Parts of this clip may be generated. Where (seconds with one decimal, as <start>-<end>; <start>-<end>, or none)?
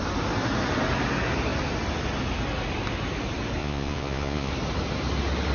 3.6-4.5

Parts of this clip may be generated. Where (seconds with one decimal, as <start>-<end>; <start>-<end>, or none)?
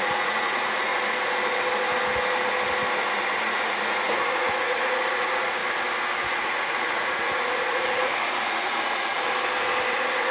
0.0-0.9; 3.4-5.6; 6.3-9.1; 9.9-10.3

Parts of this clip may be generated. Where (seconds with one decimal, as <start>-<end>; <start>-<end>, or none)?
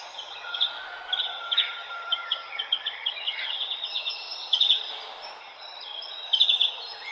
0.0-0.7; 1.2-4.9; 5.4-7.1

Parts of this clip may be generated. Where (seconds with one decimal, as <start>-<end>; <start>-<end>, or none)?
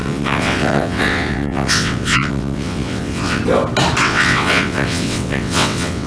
0.0-3.4; 4.0-6.1